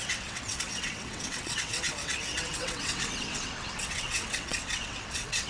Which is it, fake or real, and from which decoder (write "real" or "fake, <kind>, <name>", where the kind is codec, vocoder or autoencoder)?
fake, vocoder, WaveNeXt